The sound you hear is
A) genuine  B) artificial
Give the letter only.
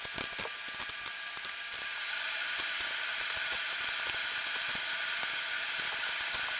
A